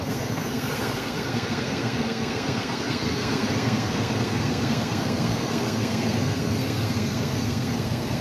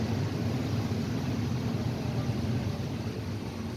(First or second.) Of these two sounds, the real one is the second